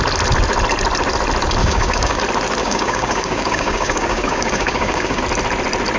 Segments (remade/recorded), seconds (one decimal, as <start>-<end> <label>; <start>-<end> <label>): 0.0-1.6 recorded; 1.6-2.2 remade; 2.2-2.6 recorded; 2.6-5.2 remade; 5.2-6.0 recorded